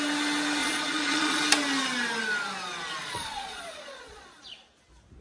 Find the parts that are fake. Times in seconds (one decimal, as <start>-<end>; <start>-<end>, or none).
0.6-1.4; 3.0-4.4